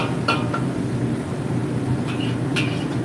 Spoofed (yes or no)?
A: no